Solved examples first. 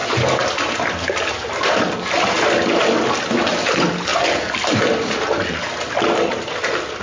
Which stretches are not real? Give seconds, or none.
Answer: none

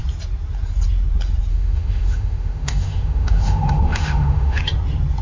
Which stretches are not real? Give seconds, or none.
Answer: 1.5-4.6 (autoencoder, DAC-VAE)

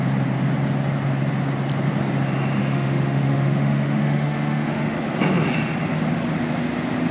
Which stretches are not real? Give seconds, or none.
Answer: 2.6-5.0 (autoencoder, DAC-VAE)